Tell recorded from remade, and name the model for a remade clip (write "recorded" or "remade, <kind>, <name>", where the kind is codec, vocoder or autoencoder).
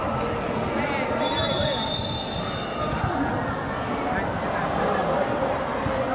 recorded